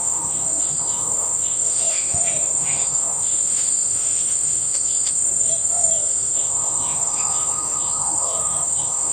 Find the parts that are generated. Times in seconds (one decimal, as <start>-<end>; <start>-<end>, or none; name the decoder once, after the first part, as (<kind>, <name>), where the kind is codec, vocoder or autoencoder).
0.0-9.1 (autoencoder, DAC-VAE)